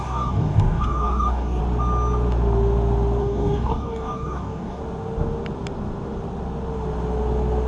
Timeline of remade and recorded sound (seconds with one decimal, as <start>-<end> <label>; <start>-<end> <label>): 0.0-1.6 remade; 1.6-3.2 recorded; 3.2-4.8 remade; 4.8-7.7 recorded